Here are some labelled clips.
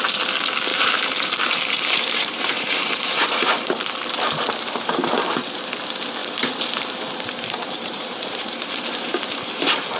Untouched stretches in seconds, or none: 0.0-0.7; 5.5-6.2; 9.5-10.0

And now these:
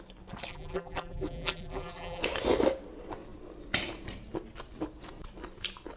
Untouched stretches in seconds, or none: 0.0-0.5; 2.2-6.0

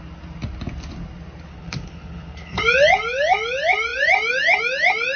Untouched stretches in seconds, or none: 0.0-1.5; 2.6-5.2

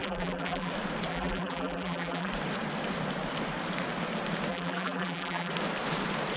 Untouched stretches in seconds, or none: 0.7-1.1; 2.3-4.5; 5.5-6.4

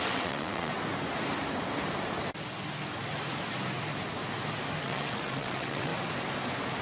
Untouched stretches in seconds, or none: 0.7-4.8; 5.9-6.8

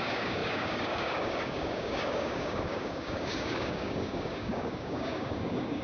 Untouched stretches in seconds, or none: none

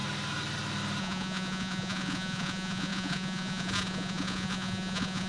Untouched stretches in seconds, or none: 0.0-1.0